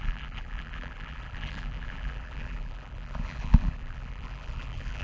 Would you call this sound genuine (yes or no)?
no